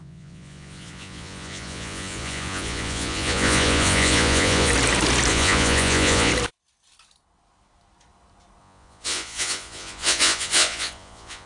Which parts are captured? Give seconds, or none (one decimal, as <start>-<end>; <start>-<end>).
4.7-5.3; 6.3-8.6